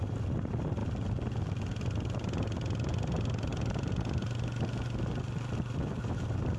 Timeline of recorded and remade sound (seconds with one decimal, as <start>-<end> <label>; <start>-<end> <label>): 0.0-6.6 recorded